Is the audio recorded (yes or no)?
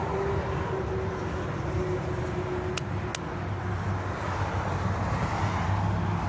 yes